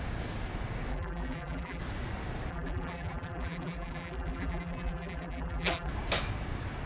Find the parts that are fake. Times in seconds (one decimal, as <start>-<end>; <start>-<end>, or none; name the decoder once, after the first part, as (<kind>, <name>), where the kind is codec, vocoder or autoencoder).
0.9-1.8 (vocoder, BigVGAN v2); 2.5-5.9